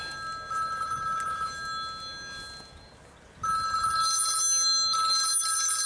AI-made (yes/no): no